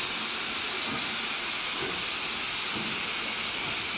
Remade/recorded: recorded